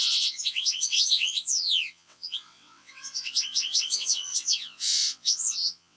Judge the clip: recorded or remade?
remade